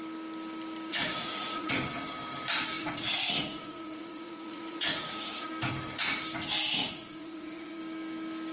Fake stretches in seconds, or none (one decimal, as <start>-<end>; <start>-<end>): 0.9-1.7; 2.8-5.5; 6.8-7.8